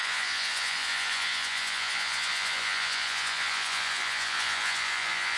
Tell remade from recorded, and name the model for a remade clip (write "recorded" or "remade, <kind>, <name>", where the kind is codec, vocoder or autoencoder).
remade, vocoder, Vocos